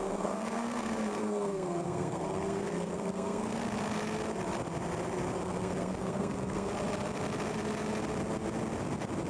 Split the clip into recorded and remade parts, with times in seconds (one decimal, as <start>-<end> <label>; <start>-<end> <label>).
0.0-3.6 remade; 3.6-5.4 recorded; 5.4-6.7 remade; 6.7-9.3 recorded